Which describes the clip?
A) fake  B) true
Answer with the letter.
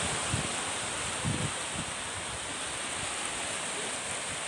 B